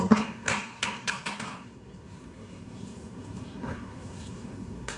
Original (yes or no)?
no